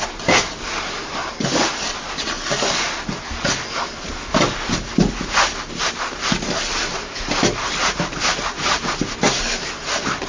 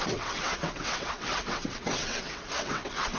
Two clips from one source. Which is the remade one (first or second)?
second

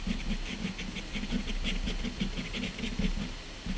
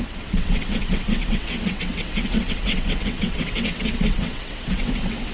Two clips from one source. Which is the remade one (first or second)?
second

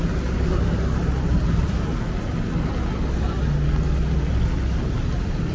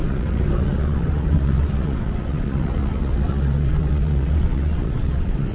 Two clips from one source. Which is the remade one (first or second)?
second